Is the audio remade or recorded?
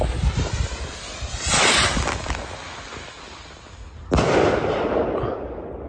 recorded